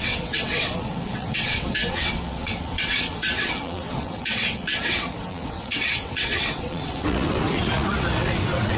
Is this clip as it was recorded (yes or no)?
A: no